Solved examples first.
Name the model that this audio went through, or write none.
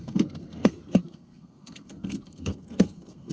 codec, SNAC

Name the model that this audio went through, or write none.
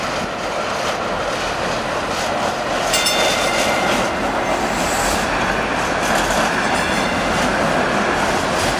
none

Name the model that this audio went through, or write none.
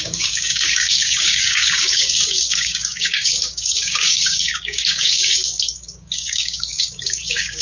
codec, DAC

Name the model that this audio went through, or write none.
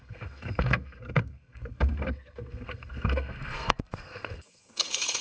codec, SNAC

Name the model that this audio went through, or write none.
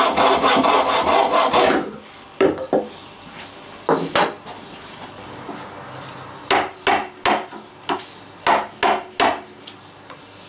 none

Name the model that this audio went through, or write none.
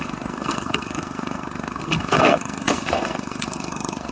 codec, SNAC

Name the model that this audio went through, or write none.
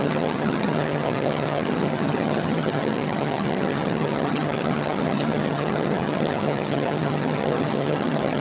vocoder, HiFi-GAN